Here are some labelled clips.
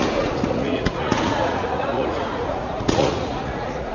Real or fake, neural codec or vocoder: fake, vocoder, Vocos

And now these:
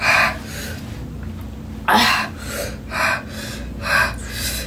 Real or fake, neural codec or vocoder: real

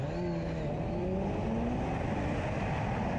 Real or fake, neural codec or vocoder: real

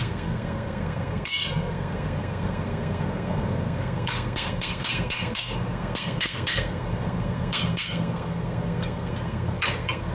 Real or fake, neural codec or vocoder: fake, codec, SNAC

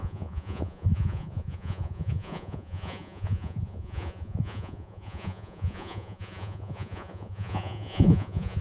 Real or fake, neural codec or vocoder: fake, vocoder, Vocos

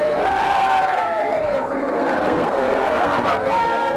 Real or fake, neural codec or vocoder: fake, codec, SNAC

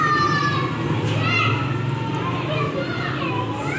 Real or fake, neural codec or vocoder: real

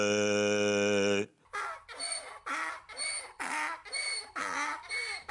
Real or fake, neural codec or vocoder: real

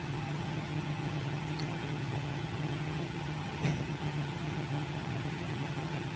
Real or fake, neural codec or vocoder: fake, vocoder, HiFi-GAN